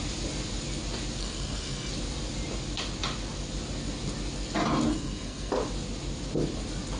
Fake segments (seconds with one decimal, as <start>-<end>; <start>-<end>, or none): 1.2-1.9; 4.9-5.5